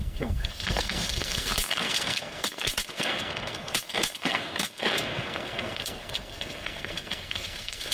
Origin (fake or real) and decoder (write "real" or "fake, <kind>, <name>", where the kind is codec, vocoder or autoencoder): fake, codec, SNAC